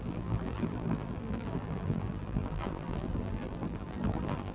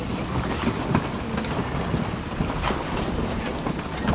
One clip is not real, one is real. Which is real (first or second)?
second